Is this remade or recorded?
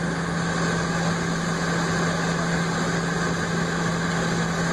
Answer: recorded